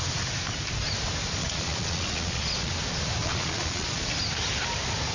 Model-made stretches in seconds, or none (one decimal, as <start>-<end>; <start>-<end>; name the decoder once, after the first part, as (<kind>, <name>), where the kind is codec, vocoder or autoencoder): 1.4-2.7 (vocoder, Vocos); 3.2-4.1